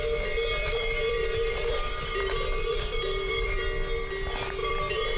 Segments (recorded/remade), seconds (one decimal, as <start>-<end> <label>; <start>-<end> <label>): 0.0-0.5 recorded; 0.5-3.6 remade; 3.6-4.6 recorded; 4.6-5.2 remade